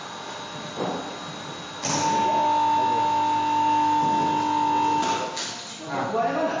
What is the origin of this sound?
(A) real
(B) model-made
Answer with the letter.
A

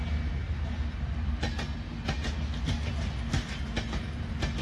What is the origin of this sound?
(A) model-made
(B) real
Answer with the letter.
B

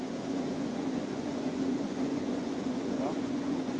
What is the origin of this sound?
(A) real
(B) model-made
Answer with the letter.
B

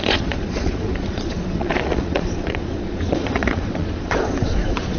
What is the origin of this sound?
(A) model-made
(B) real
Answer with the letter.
A